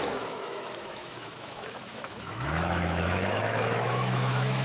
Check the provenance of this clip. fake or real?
fake